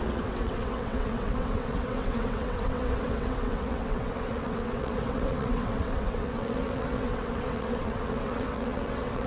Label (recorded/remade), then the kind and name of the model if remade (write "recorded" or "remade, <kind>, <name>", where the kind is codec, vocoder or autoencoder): remade, vocoder, WaveNeXt